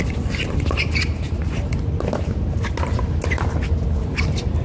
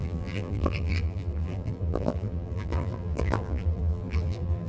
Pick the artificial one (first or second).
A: second